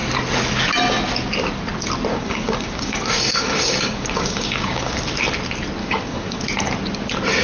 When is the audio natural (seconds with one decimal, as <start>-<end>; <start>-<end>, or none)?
0.0-2.1; 4.9-5.8; 6.4-7.4